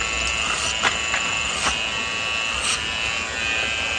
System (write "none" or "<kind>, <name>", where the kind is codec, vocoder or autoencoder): none